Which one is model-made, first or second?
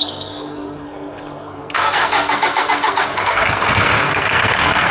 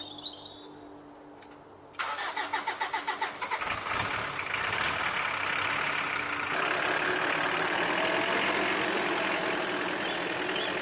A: first